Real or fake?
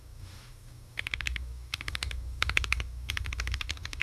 fake